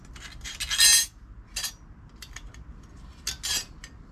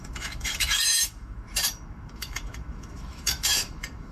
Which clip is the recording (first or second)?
first